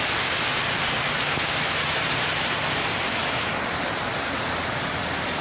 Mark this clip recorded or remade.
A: recorded